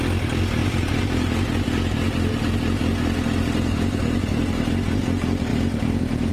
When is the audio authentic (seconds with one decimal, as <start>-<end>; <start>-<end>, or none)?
0.0-6.3